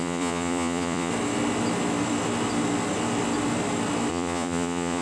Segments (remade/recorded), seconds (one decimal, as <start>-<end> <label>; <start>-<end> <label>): 0.0-1.1 remade; 1.1-4.1 recorded; 4.1-5.0 remade